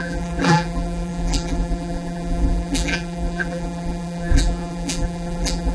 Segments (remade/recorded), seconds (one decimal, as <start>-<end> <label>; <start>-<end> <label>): 0.0-5.7 remade